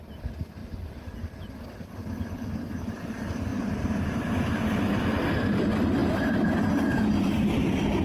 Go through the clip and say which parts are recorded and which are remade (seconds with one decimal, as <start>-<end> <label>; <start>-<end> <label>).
0.0-0.6 recorded; 0.6-1.4 remade; 1.4-3.5 recorded; 3.5-4.3 remade; 4.3-8.0 recorded